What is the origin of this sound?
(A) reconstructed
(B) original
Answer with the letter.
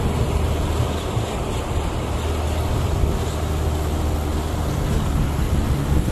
B